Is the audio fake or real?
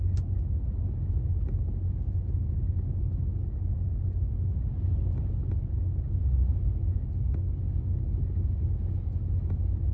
real